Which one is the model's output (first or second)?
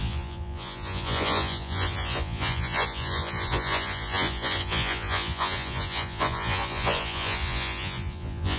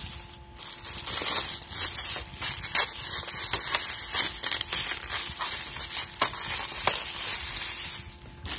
first